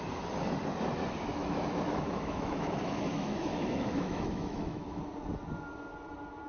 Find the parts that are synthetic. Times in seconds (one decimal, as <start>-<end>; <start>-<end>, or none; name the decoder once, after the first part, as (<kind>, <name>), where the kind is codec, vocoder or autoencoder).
1.3-5.0 (autoencoder, DAC-VAE)